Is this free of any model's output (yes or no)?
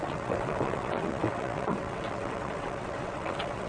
no